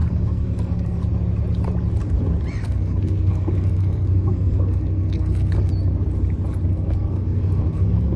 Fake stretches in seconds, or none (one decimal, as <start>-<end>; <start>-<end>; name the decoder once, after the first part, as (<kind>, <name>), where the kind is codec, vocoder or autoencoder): 0.0-1.0 (codec, SNAC); 2.6-5.7; 6.7-8.2